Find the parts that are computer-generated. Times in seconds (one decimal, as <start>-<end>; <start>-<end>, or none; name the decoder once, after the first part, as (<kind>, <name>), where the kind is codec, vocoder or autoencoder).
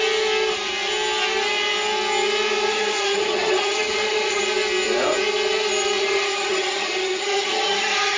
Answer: 2.7-4.4 (vocoder, HiFi-GAN); 6.0-8.2